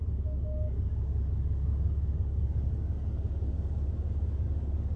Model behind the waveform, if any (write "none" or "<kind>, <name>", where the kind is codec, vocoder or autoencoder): codec, DAC